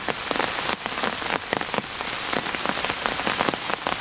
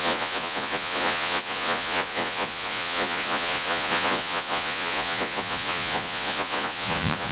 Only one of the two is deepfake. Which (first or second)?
second